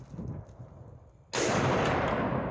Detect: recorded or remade recorded